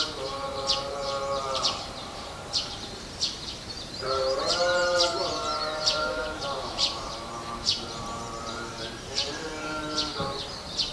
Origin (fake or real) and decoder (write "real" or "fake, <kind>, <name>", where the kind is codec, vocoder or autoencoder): fake, vocoder, BigVGAN v2